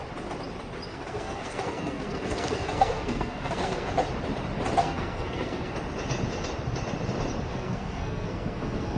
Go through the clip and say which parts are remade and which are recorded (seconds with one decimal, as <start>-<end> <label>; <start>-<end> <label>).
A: 0.0-0.9 recorded; 0.9-3.9 remade; 3.9-4.8 recorded; 4.8-5.7 remade; 5.7-7.5 recorded; 7.5-9.0 remade